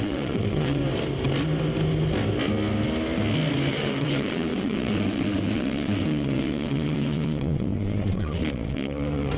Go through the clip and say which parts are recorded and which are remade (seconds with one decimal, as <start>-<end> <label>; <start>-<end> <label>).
0.0-0.8 remade; 0.8-3.7 recorded; 3.7-9.4 remade

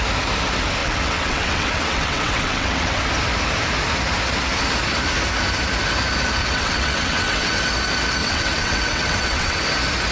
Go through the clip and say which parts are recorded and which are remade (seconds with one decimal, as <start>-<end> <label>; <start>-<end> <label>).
0.0-0.8 recorded; 0.8-3.0 remade; 3.0-6.4 recorded; 6.4-7.6 remade; 7.6-8.2 recorded; 8.2-9.6 remade; 9.6-10.1 recorded

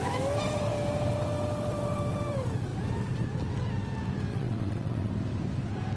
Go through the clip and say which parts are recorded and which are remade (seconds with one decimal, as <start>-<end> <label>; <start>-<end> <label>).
0.0-4.3 recorded; 4.3-5.1 remade; 5.1-6.0 recorded

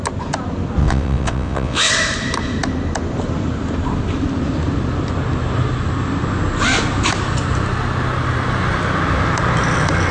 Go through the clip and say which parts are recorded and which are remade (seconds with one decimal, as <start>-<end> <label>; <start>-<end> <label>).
0.0-0.8 recorded; 0.8-1.9 remade; 1.9-10.1 recorded

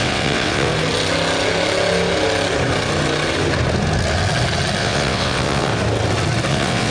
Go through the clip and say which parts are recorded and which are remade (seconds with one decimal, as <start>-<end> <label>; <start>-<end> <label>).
0.0-0.7 remade; 0.7-4.8 recorded; 4.8-5.7 remade; 5.7-6.5 recorded; 6.5-6.9 remade

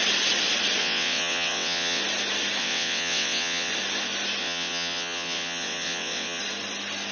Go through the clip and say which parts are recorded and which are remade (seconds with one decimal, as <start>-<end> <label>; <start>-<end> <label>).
0.0-0.8 recorded; 0.8-2.0 remade; 2.0-2.6 recorded; 2.6-3.7 remade; 3.7-4.4 recorded; 4.4-6.4 remade; 6.4-7.1 recorded

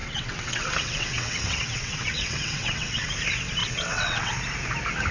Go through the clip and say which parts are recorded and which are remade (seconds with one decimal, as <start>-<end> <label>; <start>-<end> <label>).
0.0-3.1 remade; 3.1-3.6 recorded; 3.6-4.3 remade; 4.3-5.1 recorded

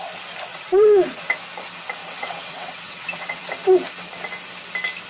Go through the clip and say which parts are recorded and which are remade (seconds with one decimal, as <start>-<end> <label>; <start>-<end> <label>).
0.0-0.5 recorded; 0.5-1.3 remade; 1.3-2.0 recorded; 2.0-3.4 remade; 3.4-5.1 recorded